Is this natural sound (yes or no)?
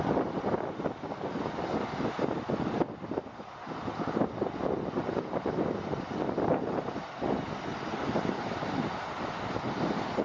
yes